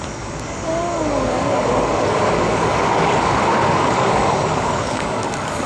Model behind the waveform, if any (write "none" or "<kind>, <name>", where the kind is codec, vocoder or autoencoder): codec, DAC